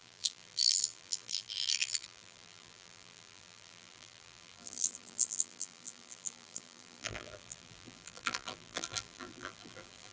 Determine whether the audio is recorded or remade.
remade